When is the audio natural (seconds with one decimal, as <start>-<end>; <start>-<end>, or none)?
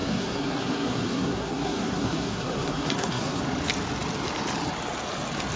3.4-5.6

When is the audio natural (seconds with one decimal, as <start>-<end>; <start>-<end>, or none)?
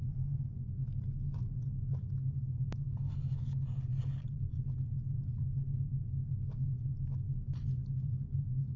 0.0-8.8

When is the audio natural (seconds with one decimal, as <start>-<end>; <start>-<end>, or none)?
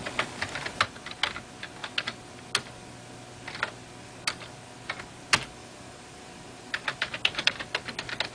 0.0-5.6; 7.7-8.3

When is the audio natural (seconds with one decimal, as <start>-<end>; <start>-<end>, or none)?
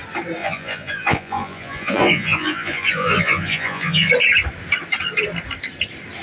0.0-0.4; 4.1-6.2